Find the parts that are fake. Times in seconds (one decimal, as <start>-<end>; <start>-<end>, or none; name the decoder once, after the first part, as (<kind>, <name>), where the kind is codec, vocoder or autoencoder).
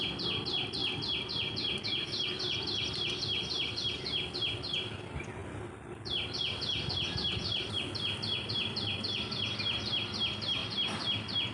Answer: none